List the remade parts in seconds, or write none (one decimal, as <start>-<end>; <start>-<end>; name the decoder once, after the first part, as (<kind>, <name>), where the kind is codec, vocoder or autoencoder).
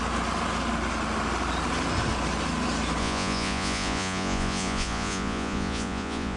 3.0-6.4 (vocoder, Vocos)